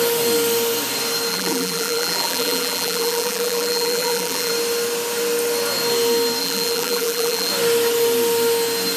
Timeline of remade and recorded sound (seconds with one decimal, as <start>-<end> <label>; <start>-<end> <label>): 0.0-1.3 recorded; 1.3-4.5 remade; 4.5-6.4 recorded; 6.4-7.5 remade; 7.5-9.0 recorded